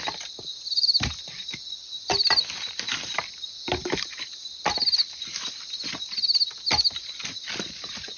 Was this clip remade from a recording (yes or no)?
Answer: no